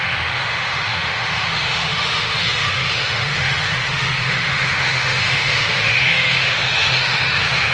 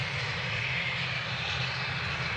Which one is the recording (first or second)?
second